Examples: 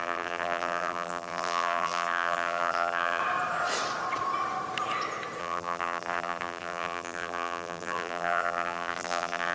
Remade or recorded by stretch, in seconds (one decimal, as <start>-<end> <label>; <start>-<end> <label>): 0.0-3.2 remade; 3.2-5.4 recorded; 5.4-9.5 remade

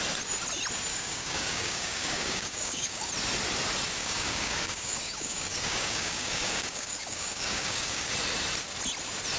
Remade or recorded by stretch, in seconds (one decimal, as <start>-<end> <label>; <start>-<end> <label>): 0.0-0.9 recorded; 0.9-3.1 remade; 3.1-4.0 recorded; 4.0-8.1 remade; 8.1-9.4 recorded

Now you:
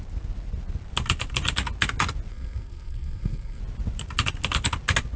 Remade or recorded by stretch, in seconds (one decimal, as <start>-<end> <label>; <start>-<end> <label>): 0.0-2.3 recorded; 2.3-3.6 remade; 3.6-5.2 recorded